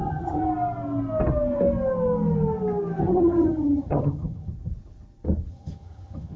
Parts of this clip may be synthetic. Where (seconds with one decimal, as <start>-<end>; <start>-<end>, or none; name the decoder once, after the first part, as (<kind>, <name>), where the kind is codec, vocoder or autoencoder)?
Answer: 0.0-0.4 (vocoder, HiFi-GAN); 3.0-4.5; 5.5-6.4